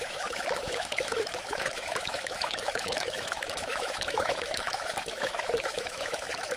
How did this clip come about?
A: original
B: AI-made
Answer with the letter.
B